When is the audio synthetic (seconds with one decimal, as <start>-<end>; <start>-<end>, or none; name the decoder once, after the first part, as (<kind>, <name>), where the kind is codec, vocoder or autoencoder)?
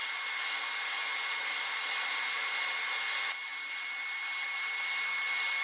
none